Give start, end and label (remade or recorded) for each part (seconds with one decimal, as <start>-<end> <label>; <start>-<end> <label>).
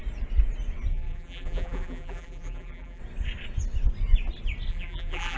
0.0-0.9 recorded; 0.9-3.0 remade; 3.0-4.7 recorded; 4.7-5.4 remade